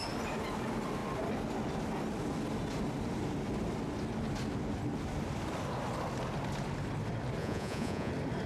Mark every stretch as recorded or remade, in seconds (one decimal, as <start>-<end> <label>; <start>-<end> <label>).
0.0-7.4 recorded; 7.4-8.1 remade; 8.1-8.5 recorded